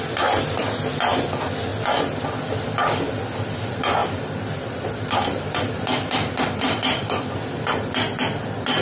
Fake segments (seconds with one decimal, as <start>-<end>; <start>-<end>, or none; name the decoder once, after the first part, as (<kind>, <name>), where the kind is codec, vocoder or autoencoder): 4.0-7.3 (vocoder, BigVGAN v2)